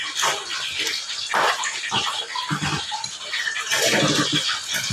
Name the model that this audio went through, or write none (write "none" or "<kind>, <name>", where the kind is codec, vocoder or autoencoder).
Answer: none